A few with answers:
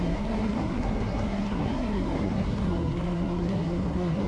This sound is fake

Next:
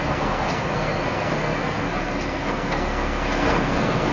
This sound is fake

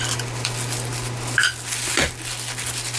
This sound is real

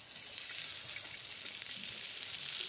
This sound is real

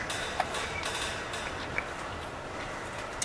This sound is real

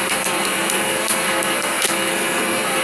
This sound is fake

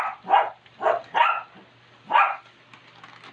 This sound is real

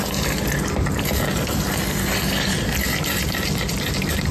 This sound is real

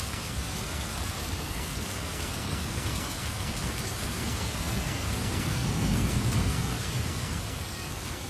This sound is fake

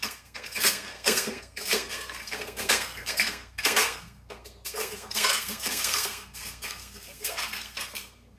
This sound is fake